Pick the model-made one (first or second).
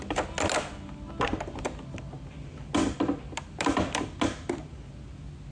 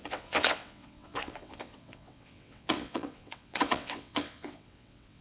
second